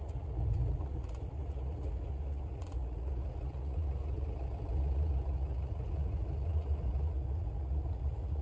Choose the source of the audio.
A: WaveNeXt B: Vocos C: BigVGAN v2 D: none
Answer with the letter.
B